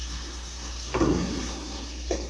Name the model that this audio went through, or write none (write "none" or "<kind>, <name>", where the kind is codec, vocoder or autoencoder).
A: codec, SNAC